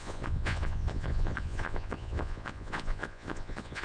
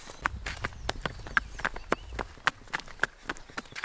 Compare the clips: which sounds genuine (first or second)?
second